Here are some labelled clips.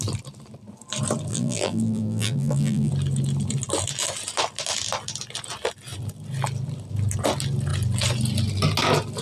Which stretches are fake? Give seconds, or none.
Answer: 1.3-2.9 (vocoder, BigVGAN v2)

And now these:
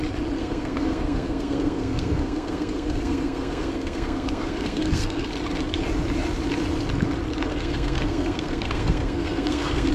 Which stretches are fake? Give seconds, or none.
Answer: 0.4-5.3 (codec, SNAC); 7.5-9.9

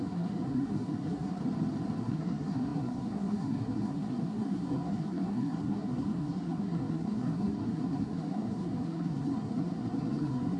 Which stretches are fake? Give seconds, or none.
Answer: 0.0-1.4 (codec, SNAC); 2.0-10.6